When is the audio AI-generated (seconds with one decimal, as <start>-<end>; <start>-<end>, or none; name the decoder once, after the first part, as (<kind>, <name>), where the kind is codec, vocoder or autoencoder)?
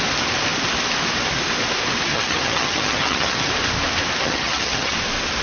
2.1-3.5 (vocoder, HiFi-GAN); 4.2-4.9